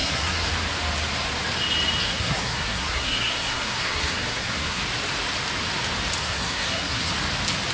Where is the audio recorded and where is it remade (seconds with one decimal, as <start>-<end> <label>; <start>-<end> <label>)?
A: 0.0-0.5 remade; 0.5-2.0 recorded; 2.0-4.8 remade; 4.8-6.2 recorded; 6.2-7.1 remade; 7.1-7.7 recorded